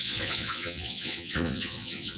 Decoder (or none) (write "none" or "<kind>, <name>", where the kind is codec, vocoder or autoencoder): vocoder, Vocos